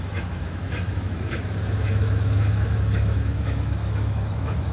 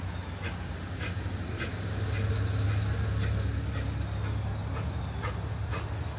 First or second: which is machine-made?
first